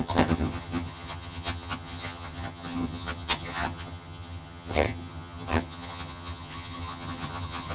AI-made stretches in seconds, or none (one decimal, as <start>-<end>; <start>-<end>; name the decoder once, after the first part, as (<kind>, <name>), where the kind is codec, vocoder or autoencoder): 0.0-7.7 (vocoder, HiFi-GAN)